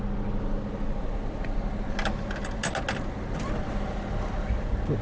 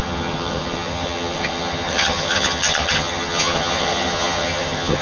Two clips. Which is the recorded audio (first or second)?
first